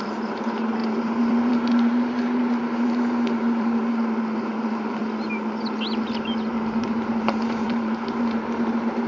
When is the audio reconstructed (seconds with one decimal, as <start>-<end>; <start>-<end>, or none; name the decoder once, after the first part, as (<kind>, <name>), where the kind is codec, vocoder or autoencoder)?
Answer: 0.0-5.0 (vocoder, BigVGAN v2); 6.0-9.1